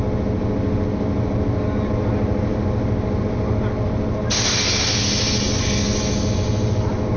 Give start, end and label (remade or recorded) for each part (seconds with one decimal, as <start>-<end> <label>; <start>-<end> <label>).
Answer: 0.0-7.2 recorded